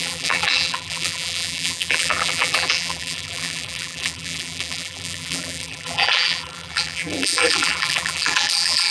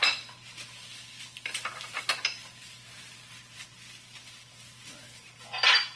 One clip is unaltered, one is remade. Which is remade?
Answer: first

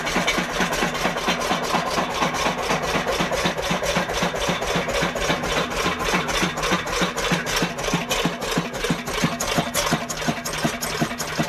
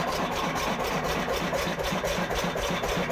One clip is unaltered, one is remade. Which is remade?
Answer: second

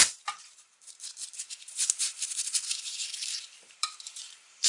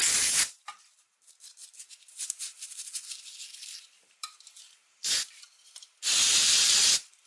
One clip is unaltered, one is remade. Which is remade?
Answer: first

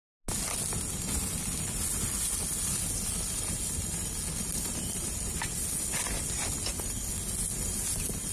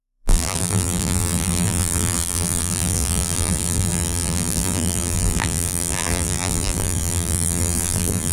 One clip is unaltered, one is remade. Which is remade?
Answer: second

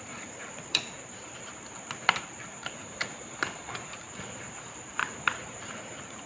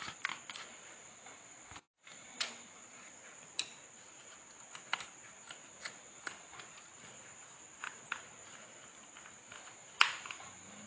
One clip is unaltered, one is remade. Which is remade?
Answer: first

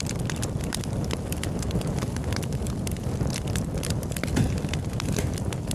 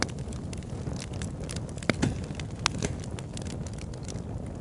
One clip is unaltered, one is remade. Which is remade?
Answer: first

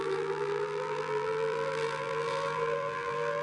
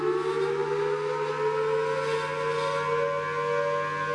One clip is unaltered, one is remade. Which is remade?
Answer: first